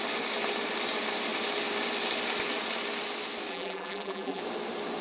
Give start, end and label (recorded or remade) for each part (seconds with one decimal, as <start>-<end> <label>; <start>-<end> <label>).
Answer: 0.0-3.5 recorded; 3.5-4.4 remade; 4.4-5.0 recorded